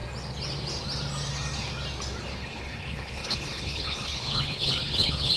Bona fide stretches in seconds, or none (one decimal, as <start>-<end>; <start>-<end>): 0.0-2.3